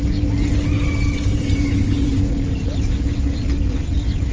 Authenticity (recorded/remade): recorded